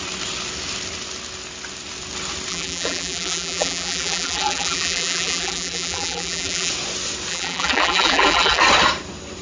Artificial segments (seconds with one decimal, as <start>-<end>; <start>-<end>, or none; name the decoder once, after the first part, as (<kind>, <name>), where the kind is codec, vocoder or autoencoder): 2.5-6.7 (vocoder, BigVGAN v2); 7.3-8.6